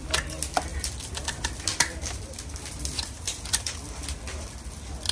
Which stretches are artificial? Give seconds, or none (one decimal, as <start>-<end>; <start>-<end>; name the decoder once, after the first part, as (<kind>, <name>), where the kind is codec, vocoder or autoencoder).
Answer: 0.7-3.8 (vocoder, BigVGAN v2)